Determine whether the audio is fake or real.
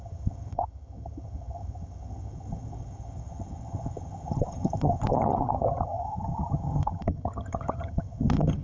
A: fake